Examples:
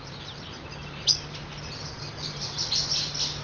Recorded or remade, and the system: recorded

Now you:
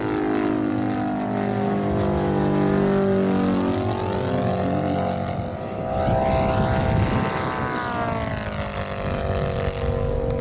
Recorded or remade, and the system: recorded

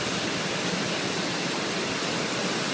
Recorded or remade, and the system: recorded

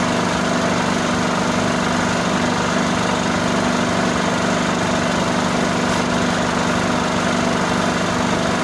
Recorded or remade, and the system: recorded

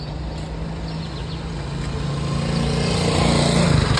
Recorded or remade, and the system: recorded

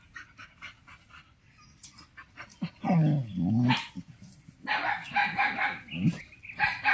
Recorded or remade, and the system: recorded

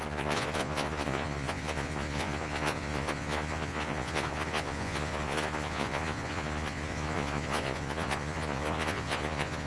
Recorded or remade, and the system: remade, vocoder, Vocos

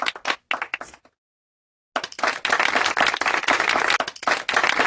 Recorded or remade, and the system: recorded